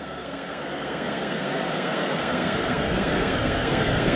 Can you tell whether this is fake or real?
fake